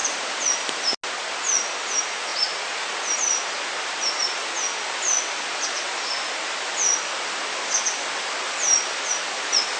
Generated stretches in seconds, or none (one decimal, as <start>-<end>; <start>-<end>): none